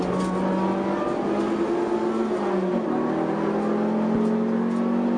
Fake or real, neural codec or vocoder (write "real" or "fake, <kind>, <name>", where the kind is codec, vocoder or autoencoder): real